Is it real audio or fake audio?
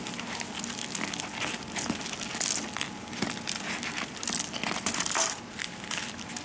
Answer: real